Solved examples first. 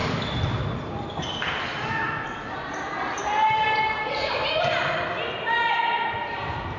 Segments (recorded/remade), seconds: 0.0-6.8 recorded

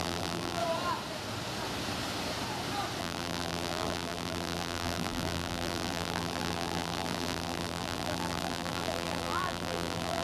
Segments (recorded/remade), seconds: 0.0-0.6 remade; 0.6-3.0 recorded; 3.0-10.2 remade

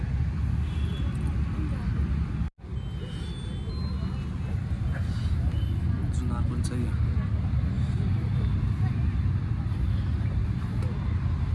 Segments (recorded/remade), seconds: 0.0-11.5 recorded

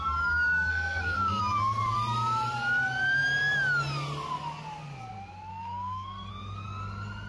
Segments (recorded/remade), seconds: 0.0-0.7 recorded; 0.7-1.4 remade; 1.4-5.5 recorded; 5.5-6.3 remade; 6.3-7.3 recorded

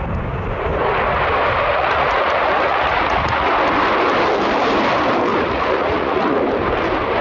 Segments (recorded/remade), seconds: 0.0-1.7 recorded; 1.7-3.5 remade; 3.5-5.3 recorded; 5.3-6.4 remade; 6.4-7.2 recorded

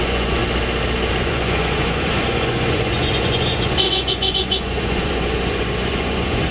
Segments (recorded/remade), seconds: 0.0-0.4 remade; 0.4-1.2 recorded; 1.2-6.5 remade

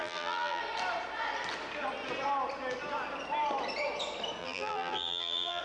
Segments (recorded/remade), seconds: 0.0-0.6 remade; 0.6-4.4 recorded; 4.4-5.6 remade